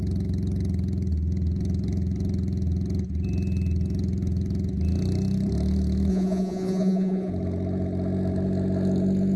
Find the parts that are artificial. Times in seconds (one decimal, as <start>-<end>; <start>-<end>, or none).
6.1-7.3

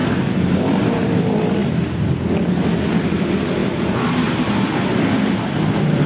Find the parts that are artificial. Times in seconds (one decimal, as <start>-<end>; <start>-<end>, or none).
0.0-1.1; 3.6-6.1

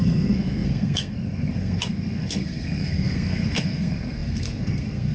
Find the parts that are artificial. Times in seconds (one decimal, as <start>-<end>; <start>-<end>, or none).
0.0-5.1

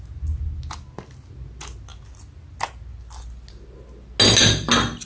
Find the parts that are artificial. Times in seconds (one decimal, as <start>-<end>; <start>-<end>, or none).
none

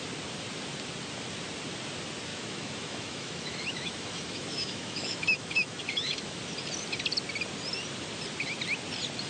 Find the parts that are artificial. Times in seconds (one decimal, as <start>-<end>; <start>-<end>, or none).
2.3-6.4